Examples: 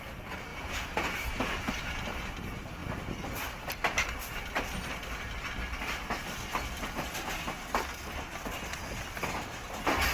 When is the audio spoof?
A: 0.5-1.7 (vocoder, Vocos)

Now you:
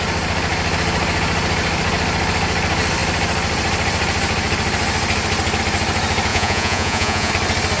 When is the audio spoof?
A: 6.3-7.3 (vocoder, Vocos)

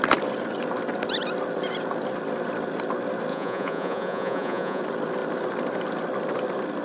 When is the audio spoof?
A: 3.3-4.8 (vocoder, Vocos)

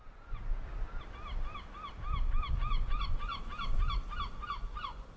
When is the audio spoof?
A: 0.0-0.5 (vocoder, Vocos); 2.5-3.3; 4.4-5.2

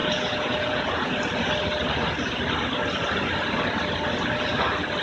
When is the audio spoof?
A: 0.0-1.1 (vocoder, Vocos)